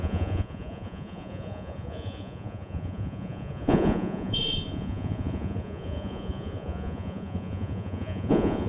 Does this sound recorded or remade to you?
remade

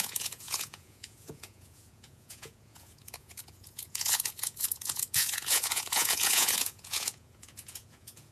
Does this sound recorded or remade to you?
remade